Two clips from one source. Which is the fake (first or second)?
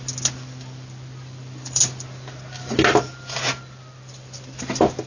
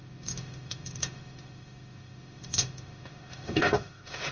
second